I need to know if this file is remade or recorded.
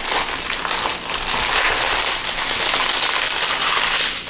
recorded